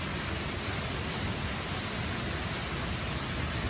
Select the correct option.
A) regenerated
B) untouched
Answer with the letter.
B